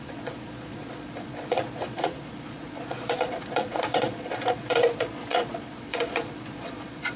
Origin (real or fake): fake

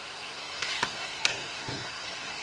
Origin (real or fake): fake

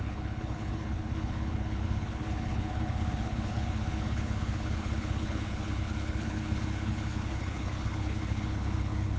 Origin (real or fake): fake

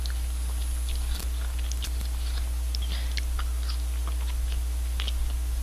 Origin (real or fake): real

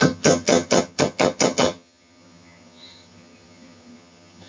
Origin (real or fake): fake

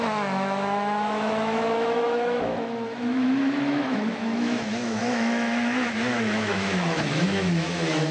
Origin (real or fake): fake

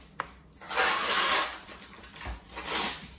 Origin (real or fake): real